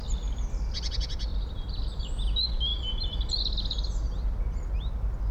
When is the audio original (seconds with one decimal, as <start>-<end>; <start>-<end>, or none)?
0.0-5.3

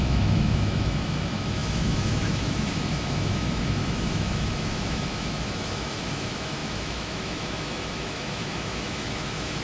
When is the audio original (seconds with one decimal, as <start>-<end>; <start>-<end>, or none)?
none

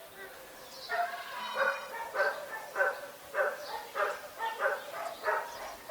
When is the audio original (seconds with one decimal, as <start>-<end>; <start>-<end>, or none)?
0.0-1.4; 1.9-5.9

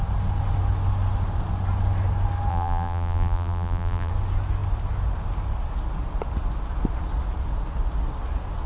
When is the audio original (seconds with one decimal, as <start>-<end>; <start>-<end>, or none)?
0.0-2.5; 4.1-8.7

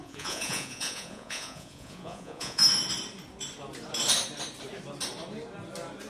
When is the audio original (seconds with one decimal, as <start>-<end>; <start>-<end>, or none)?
2.6-6.1